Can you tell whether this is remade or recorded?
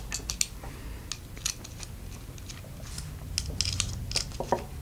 recorded